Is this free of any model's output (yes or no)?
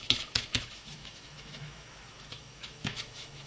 no